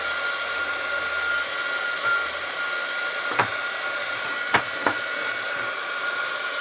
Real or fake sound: real